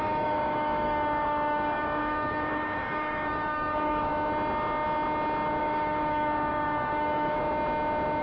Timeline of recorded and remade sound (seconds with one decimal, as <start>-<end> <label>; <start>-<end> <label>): 0.0-4.1 remade; 4.1-5.6 recorded; 5.6-7.4 remade; 7.4-8.2 recorded